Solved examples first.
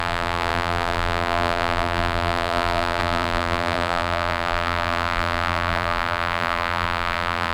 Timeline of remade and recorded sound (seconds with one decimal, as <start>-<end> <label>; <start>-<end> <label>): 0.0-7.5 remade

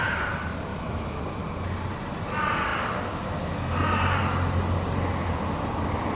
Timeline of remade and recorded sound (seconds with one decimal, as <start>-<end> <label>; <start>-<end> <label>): 0.0-0.7 recorded; 0.7-1.2 remade; 1.2-6.2 recorded

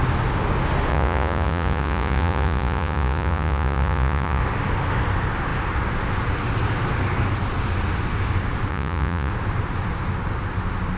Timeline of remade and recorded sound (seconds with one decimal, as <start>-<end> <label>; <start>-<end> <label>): 0.0-0.9 recorded; 0.9-4.4 remade; 4.4-8.7 recorded; 8.7-9.3 remade; 9.3-11.0 recorded

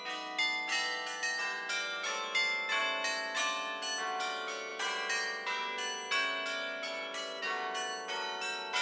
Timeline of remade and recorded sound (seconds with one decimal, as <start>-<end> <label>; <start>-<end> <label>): 0.0-8.8 recorded

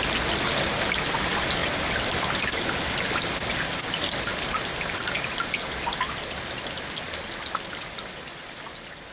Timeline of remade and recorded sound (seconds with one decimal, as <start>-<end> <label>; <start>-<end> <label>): 0.0-9.1 recorded

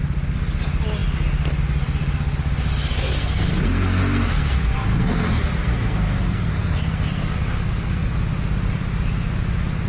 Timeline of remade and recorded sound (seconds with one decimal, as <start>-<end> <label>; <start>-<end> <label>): 0.0-2.9 recorded; 2.9-8.1 remade; 8.1-9.9 recorded

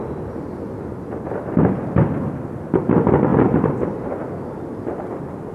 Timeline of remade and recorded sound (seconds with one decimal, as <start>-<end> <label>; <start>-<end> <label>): 0.0-3.3 recorded; 3.3-4.1 remade; 4.1-5.5 recorded

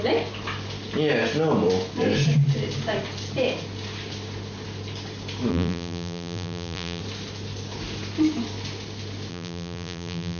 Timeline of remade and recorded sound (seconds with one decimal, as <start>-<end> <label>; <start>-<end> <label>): 0.0-5.5 recorded; 5.5-7.0 remade; 7.0-9.3 recorded; 9.3-10.4 remade